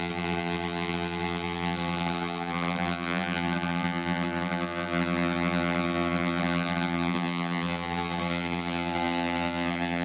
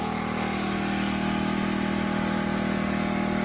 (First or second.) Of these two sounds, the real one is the second